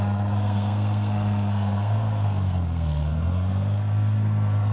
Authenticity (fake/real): fake